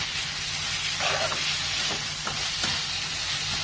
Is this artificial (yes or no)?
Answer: no